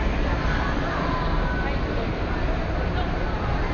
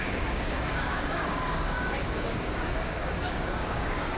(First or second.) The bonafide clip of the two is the first